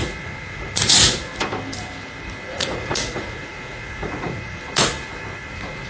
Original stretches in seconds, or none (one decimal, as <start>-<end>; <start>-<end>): 1.2-2.5; 4.6-5.5